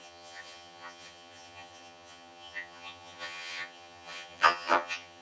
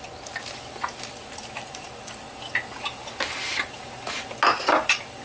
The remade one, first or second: first